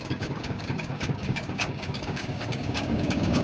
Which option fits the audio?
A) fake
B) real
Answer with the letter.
A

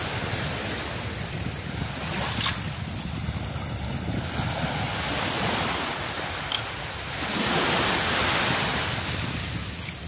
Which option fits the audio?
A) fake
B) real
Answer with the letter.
B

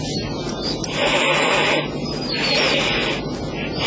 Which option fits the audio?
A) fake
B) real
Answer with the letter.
B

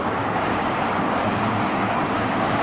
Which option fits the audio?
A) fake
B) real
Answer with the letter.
A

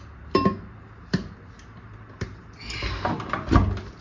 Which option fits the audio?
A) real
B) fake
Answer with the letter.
A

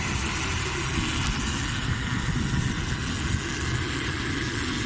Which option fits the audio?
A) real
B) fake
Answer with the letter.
A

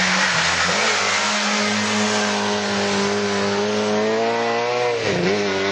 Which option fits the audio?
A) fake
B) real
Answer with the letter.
B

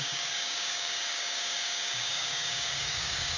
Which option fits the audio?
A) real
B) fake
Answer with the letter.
B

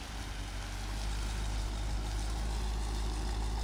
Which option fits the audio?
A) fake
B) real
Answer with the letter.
B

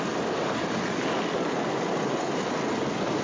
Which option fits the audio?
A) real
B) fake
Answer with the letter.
A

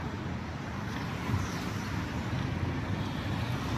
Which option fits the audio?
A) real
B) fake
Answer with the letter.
A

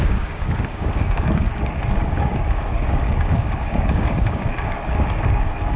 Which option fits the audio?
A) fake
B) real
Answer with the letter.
A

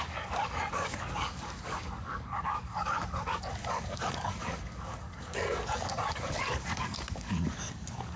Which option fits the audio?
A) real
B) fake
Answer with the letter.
B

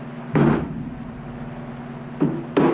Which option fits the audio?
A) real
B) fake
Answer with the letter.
A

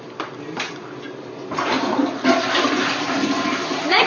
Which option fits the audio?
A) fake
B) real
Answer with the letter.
B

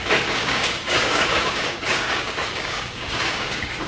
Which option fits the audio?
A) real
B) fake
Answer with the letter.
B